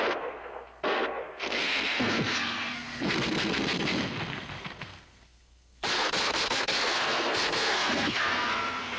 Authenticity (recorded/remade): remade